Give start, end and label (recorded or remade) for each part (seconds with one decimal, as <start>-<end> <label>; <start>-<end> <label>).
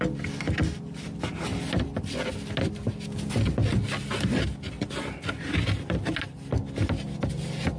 0.0-7.8 recorded